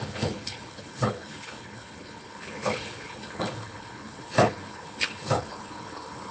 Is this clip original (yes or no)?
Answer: no